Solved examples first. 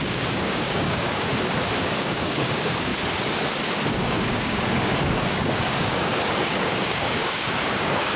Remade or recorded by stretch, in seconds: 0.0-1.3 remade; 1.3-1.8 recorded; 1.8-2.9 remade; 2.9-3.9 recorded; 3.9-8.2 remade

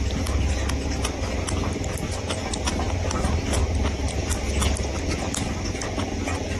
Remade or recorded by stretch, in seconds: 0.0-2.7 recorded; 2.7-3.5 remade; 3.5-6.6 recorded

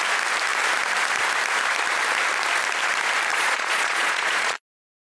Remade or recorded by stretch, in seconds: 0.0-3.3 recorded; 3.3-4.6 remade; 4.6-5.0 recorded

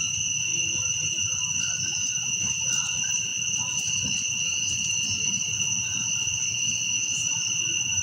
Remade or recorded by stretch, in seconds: 0.0-0.5 remade; 0.5-1.8 recorded; 1.8-3.3 remade; 3.3-7.0 recorded; 7.0-8.0 remade